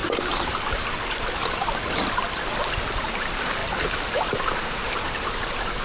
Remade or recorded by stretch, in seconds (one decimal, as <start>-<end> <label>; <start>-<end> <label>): 0.0-5.8 recorded